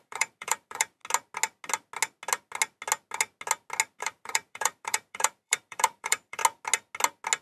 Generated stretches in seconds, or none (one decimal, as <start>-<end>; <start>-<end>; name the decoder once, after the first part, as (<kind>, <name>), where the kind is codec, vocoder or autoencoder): 0.0-1.0 (vocoder, BigVGAN v2); 4.0-6.4